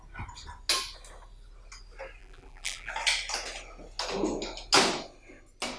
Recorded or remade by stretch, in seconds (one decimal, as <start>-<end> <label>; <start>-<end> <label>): 0.0-2.2 recorded; 2.2-2.9 remade; 2.9-5.8 recorded